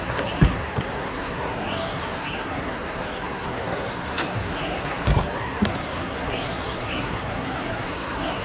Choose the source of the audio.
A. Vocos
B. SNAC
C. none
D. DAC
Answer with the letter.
B